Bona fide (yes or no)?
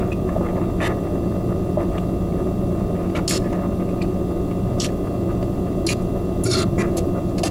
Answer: yes